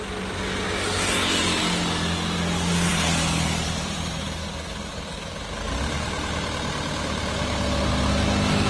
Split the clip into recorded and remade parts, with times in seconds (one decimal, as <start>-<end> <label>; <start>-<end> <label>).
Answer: 0.0-2.9 recorded; 2.9-4.1 remade; 4.1-4.9 recorded; 4.9-6.3 remade; 6.3-8.7 recorded